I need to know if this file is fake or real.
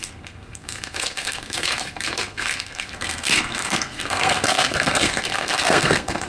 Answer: fake